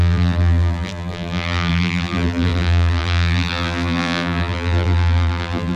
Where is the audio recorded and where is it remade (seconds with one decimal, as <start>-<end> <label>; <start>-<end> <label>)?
0.0-5.8 remade